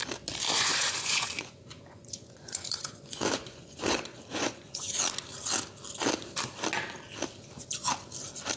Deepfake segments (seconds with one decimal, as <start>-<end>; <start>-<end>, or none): 0.5-4.9

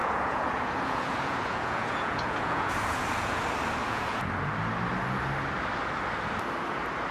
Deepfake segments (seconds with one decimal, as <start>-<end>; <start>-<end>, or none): 0.0-3.4; 3.8-4.3

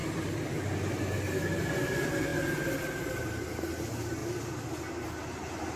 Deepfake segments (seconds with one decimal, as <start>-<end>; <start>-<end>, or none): none